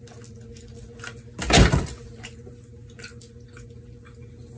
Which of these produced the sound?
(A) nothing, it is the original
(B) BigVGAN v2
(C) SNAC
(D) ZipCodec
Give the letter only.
A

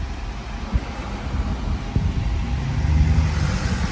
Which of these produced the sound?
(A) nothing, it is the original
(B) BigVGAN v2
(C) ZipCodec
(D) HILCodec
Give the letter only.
A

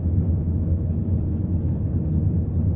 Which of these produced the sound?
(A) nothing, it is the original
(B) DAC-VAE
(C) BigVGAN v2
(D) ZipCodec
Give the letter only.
A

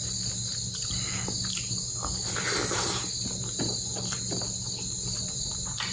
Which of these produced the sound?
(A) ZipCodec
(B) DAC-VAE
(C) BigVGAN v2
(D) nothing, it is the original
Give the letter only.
D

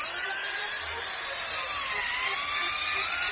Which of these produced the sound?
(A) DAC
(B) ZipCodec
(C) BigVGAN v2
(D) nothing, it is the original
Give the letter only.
D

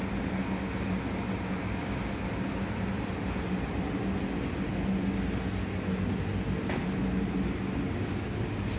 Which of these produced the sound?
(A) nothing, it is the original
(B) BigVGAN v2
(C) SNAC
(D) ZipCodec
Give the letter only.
A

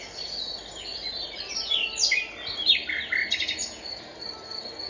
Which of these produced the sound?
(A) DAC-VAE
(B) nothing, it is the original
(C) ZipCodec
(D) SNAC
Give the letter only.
B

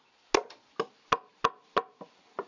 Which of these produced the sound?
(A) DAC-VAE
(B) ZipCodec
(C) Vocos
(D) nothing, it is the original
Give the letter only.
D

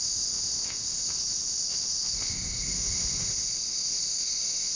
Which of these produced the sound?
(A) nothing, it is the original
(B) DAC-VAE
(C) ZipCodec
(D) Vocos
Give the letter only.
C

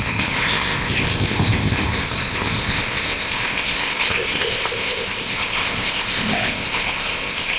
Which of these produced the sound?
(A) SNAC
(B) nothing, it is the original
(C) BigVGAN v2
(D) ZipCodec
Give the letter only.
D